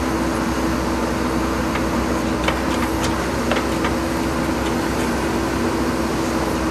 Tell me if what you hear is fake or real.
real